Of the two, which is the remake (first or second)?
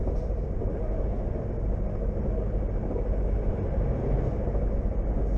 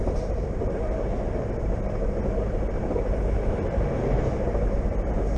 second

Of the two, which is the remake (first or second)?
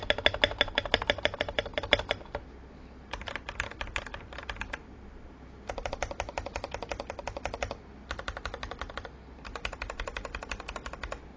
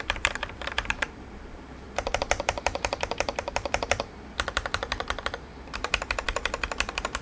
second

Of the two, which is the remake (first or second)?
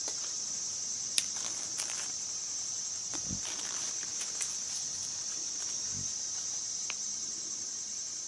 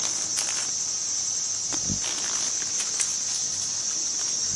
first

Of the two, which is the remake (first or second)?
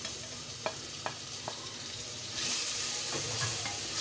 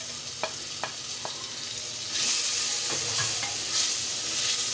first